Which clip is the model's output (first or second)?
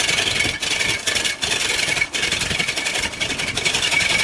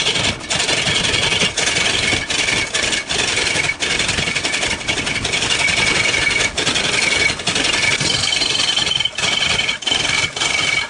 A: first